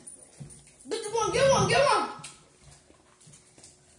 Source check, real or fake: real